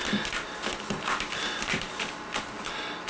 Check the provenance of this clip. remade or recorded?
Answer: recorded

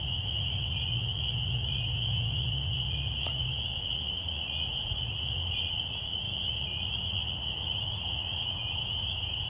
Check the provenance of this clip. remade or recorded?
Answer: remade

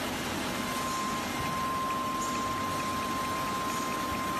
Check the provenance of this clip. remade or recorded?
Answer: recorded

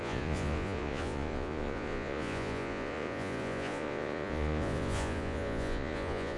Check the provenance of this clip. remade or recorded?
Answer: remade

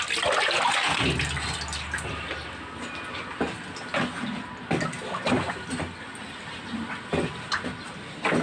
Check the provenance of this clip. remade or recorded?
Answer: recorded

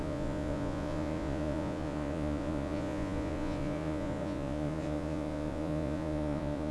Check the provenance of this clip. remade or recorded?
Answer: remade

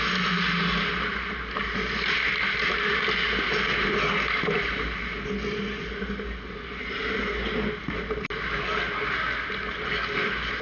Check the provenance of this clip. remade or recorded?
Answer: recorded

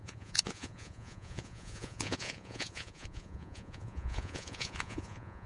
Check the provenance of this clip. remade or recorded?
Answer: remade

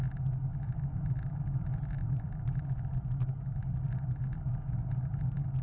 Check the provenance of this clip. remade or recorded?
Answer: recorded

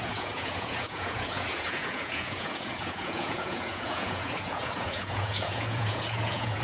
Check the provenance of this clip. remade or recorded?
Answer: remade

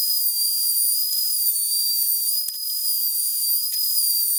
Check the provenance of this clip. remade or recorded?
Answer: remade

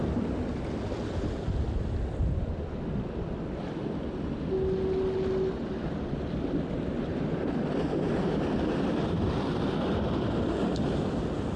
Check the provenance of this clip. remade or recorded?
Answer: recorded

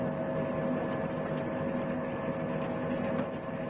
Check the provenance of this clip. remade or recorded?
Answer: recorded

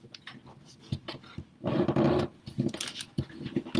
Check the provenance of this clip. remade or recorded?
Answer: recorded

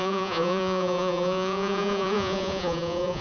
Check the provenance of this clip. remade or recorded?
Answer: remade